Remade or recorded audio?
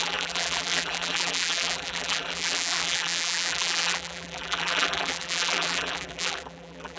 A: remade